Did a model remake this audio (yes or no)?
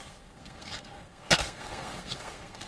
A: yes